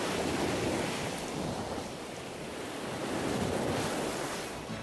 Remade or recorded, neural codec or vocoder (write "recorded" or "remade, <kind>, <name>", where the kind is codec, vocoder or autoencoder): recorded